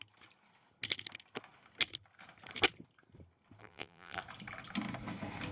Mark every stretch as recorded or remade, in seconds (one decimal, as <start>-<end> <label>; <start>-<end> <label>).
0.0-3.6 recorded; 3.6-4.2 remade; 4.2-5.5 recorded